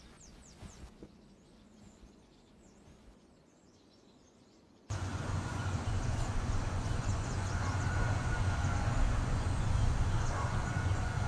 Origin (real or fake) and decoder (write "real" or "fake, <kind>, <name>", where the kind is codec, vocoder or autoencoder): fake, vocoder, Vocos